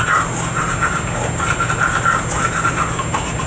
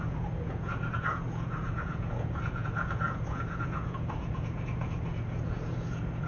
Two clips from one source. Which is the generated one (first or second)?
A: second